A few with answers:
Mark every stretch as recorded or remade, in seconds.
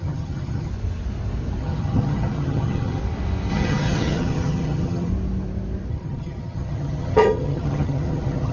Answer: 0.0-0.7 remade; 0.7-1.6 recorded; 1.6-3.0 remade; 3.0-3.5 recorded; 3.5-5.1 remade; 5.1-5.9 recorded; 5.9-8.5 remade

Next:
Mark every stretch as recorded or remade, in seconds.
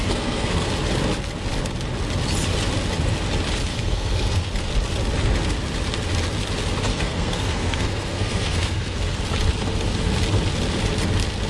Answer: 0.0-0.7 remade; 0.7-3.7 recorded; 3.7-4.4 remade; 4.4-6.9 recorded; 6.9-9.2 remade; 9.2-11.5 recorded